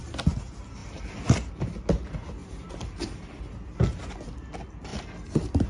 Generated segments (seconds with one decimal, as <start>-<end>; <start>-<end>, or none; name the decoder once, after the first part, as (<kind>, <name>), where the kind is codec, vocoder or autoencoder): 0.8-1.5 (vocoder, BigVGAN v2); 2.4-3.0